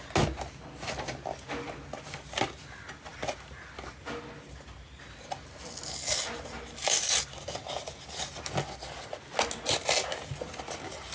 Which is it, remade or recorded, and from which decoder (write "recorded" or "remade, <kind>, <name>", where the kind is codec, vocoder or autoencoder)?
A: recorded